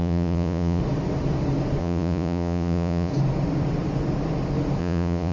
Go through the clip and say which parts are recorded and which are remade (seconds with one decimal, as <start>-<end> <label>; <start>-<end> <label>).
0.0-0.8 remade; 0.8-1.8 recorded; 1.8-3.1 remade; 3.1-4.8 recorded; 4.8-5.3 remade